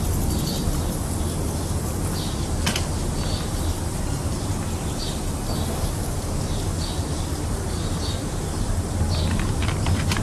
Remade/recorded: recorded